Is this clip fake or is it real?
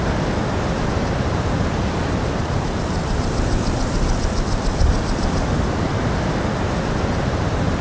real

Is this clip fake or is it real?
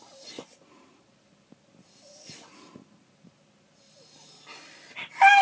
real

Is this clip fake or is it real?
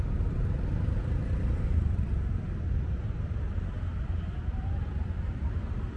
real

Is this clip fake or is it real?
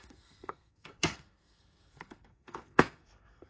fake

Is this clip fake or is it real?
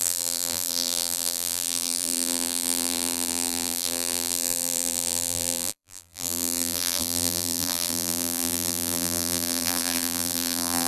fake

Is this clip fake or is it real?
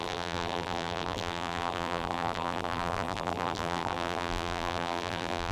fake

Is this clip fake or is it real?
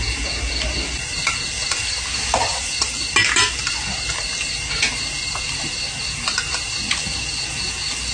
real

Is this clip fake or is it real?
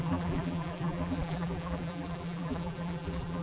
fake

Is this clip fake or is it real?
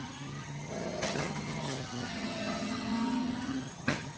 fake